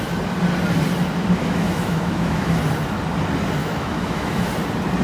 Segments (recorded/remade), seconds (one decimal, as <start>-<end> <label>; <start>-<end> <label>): 0.0-1.4 recorded; 1.4-2.6 remade; 2.6-3.6 recorded; 3.6-4.5 remade; 4.5-5.0 recorded